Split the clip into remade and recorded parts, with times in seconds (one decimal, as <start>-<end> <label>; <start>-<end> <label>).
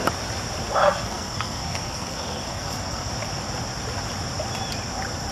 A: 0.0-0.8 recorded; 0.8-3.1 remade; 3.1-5.3 recorded